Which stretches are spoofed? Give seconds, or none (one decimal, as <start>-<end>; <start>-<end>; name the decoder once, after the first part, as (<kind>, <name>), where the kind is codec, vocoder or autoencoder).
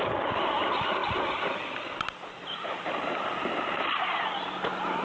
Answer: none